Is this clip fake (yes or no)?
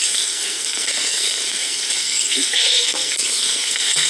yes